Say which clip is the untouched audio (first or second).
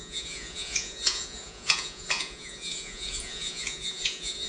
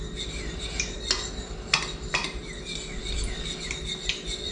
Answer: second